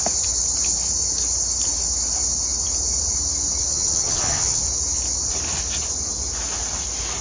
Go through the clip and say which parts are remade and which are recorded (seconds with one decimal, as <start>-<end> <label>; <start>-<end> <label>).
0.0-3.7 recorded; 3.7-4.6 remade; 4.6-7.2 recorded